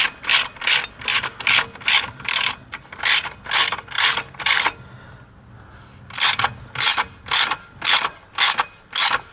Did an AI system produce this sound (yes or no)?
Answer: no